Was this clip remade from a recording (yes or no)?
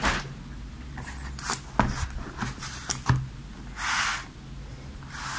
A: no